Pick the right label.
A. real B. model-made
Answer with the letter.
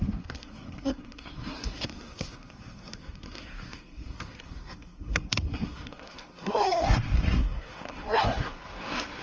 B